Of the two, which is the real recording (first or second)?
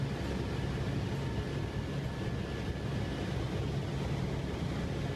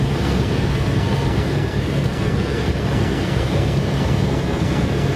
first